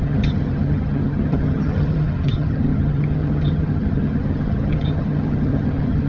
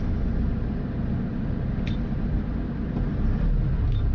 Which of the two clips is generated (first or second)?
first